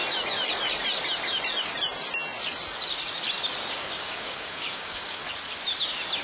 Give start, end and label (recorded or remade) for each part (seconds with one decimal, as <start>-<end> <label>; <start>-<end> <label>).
0.0-3.7 recorded; 3.7-5.2 remade; 5.2-6.2 recorded